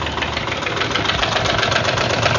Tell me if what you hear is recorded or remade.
recorded